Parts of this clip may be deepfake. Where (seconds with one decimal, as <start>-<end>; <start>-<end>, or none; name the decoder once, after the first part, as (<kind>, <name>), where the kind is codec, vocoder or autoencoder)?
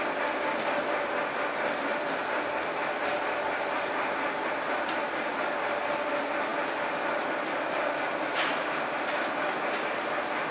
6.5-9.0 (vocoder, BigVGAN v2)